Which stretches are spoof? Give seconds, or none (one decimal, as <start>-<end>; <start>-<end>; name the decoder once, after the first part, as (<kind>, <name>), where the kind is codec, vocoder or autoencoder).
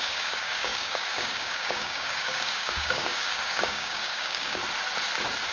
0.0-4.6 (codec, DAC)